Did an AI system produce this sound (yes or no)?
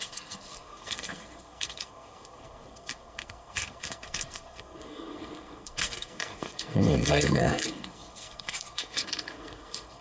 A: yes